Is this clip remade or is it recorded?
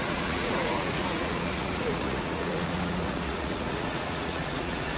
remade